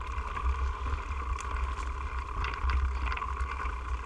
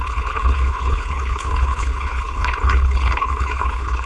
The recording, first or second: first